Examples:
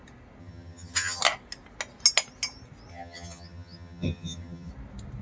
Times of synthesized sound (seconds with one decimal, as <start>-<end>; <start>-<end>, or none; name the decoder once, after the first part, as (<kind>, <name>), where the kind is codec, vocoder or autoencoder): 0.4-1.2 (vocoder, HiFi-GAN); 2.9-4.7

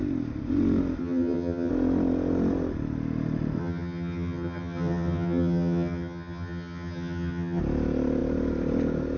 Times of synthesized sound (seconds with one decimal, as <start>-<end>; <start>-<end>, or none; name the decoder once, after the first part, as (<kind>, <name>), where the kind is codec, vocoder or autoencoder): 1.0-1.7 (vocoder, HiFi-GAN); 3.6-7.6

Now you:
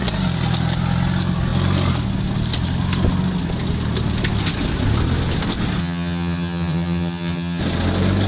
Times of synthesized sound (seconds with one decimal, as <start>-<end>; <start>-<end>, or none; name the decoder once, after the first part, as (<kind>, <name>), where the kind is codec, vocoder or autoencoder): 5.8-7.6 (vocoder, HiFi-GAN)

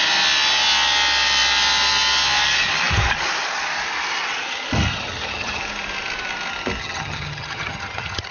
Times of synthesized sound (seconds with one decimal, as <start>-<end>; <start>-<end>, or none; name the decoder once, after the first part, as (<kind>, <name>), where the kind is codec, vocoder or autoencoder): 4.9-5.6 (vocoder, HiFi-GAN); 6.8-8.3